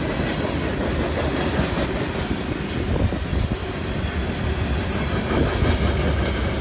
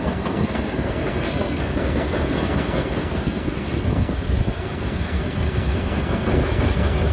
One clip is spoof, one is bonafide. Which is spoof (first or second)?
second